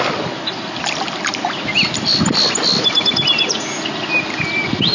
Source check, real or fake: real